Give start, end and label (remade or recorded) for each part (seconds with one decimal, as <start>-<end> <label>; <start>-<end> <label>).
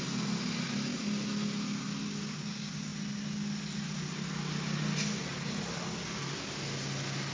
0.0-7.3 recorded